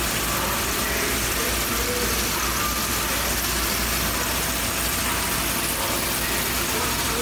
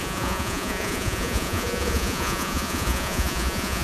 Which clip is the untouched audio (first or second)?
first